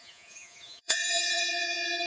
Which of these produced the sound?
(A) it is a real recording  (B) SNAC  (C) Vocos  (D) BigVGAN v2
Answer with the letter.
C